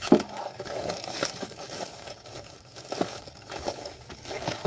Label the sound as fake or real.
fake